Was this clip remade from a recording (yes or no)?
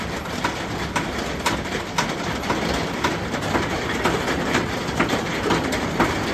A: yes